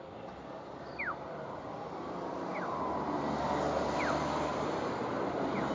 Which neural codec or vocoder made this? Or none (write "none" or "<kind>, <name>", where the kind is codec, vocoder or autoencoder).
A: vocoder, BigVGAN v2